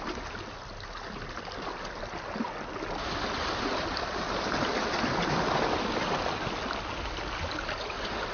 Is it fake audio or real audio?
real